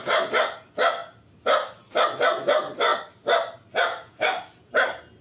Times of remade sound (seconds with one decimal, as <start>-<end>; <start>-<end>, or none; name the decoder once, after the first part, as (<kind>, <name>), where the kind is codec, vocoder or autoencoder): none